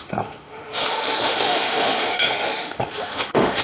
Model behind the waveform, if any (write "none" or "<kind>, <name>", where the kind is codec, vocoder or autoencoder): autoencoder, DAC-VAE